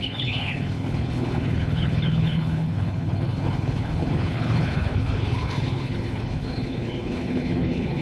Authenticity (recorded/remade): remade